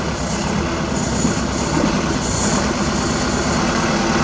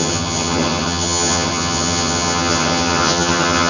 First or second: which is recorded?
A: first